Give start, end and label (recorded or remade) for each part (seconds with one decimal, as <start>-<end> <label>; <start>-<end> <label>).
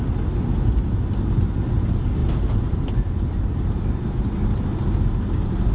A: 0.0-5.7 recorded